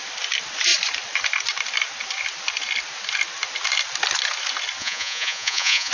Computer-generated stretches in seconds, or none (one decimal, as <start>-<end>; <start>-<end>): 4.8-5.9